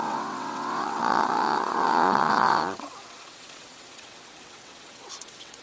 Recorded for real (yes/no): no